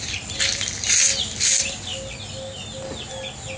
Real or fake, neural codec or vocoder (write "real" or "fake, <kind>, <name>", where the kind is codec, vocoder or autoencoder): real